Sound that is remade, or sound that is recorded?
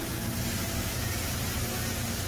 recorded